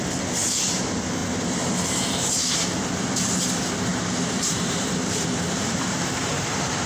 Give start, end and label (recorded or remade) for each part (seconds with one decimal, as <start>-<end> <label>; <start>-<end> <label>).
0.0-1.2 recorded; 1.2-2.9 remade; 2.9-3.9 recorded; 3.9-6.9 remade

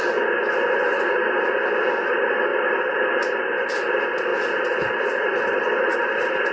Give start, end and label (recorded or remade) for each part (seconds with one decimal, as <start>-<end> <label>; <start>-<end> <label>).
0.0-4.3 recorded; 4.3-6.5 remade

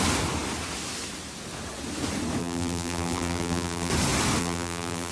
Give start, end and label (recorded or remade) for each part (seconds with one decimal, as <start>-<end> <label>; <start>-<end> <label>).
0.0-2.4 recorded; 2.4-3.9 remade; 3.9-4.4 recorded; 4.4-5.1 remade

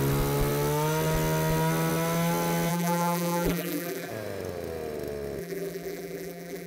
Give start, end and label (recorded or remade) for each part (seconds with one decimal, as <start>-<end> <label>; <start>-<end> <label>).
0.0-2.7 recorded; 2.7-4.1 remade; 4.1-5.4 recorded; 5.4-6.7 remade

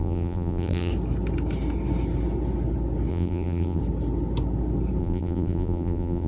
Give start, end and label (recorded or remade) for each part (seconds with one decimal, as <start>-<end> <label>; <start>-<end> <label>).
0.0-0.9 remade; 0.9-3.1 recorded; 3.1-3.8 remade; 3.8-5.0 recorded; 5.0-6.3 remade

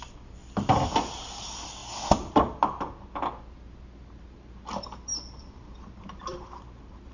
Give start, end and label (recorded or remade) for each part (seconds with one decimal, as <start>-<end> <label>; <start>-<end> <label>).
0.0-0.4 recorded; 0.4-1.4 remade; 1.4-5.1 recorded; 5.1-7.1 remade

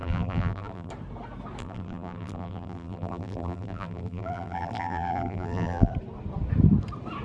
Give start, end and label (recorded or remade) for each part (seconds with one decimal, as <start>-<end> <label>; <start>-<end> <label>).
0.0-0.9 remade; 0.9-1.6 recorded; 1.6-5.9 remade; 5.9-7.2 recorded

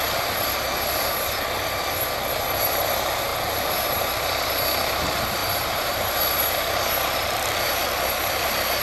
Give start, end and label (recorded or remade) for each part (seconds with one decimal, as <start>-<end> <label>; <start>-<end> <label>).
0.0-5.4 recorded; 5.4-6.2 remade; 6.2-8.8 recorded